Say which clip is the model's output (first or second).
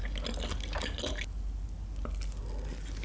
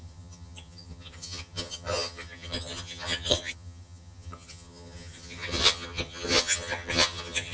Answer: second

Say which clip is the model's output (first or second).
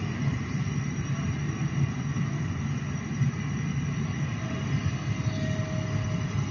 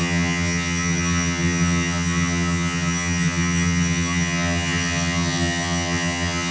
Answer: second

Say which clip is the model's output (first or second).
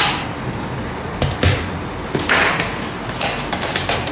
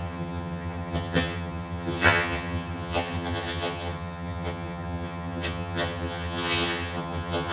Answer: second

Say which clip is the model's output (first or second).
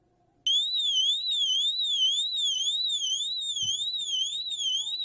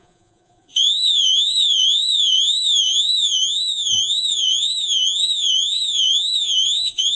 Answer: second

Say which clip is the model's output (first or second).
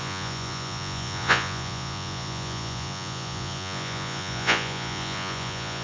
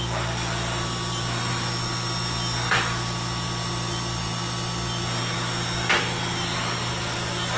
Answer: first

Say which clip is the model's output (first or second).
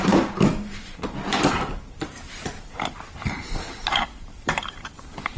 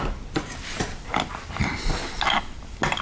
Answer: first